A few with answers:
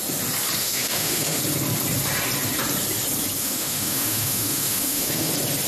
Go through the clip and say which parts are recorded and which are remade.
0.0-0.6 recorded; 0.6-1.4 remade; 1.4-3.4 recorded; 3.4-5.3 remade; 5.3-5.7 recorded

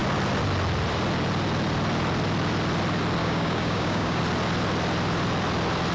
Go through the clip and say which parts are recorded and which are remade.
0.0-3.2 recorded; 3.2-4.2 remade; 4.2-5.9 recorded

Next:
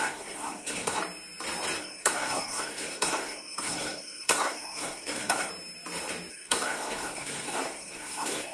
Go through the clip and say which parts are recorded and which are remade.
0.0-1.0 remade; 1.0-1.8 recorded; 1.8-5.5 remade; 5.5-6.3 recorded; 6.3-8.5 remade

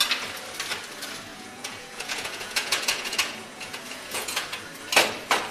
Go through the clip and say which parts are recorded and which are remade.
0.0-1.3 recorded; 1.3-4.6 remade; 4.6-5.5 recorded

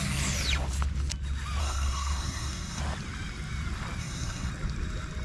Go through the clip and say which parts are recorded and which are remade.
0.0-1.6 recorded; 1.6-2.8 remade; 2.8-4.0 recorded; 4.0-4.5 remade; 4.5-5.2 recorded